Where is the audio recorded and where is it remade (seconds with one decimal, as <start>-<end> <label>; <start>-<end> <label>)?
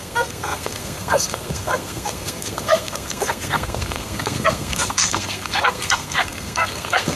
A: 0.0-7.2 remade